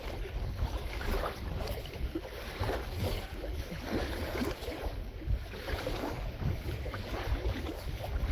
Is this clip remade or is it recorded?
remade